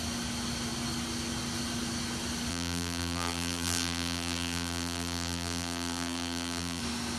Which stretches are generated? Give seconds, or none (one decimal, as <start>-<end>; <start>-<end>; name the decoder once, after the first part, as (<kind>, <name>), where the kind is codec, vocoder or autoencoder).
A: 2.5-6.8 (vocoder, BigVGAN v2)